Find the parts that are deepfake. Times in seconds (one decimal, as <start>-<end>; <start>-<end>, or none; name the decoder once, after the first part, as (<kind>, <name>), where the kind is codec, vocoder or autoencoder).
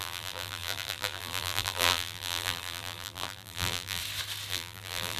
0.0-4.0 (vocoder, BigVGAN v2); 4.5-5.2